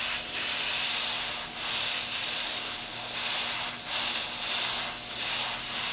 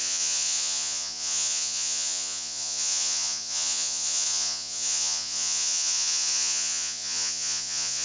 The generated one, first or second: second